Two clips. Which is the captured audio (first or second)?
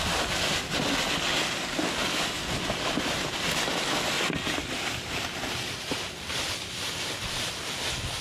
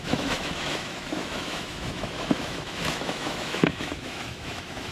first